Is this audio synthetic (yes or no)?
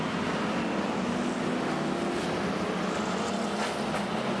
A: no